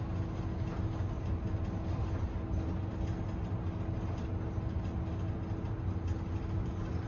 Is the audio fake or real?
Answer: real